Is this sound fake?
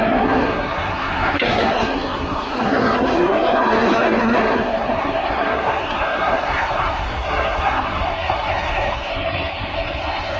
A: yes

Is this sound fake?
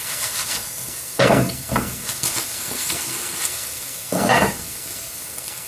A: yes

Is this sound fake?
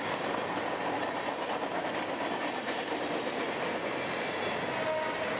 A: no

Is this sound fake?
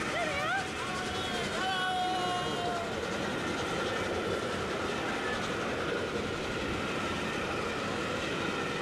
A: no